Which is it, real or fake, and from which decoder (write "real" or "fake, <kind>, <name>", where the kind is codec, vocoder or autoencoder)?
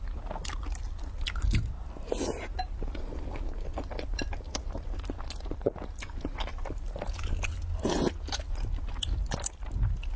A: real